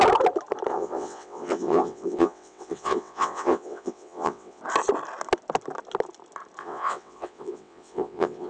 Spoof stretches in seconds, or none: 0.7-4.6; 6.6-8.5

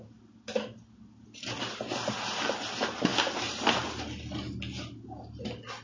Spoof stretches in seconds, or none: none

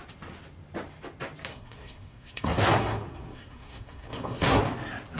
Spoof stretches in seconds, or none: 1.5-4.6

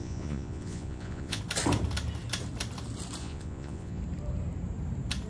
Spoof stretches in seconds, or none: 0.0-1.4; 3.2-4.0

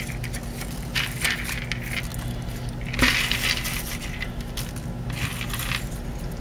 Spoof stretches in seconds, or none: none

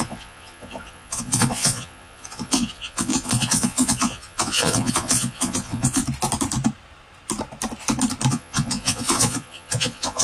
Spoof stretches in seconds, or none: 0.0-6.0; 8.3-10.2

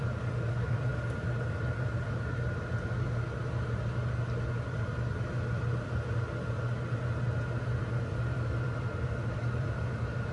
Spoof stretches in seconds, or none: 0.0-0.9; 1.5-2.3; 7.6-10.3